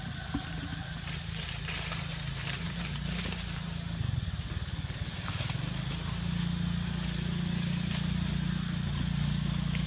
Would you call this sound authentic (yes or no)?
yes